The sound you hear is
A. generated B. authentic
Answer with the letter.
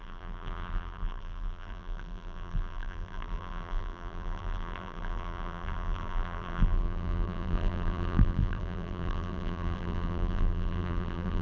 A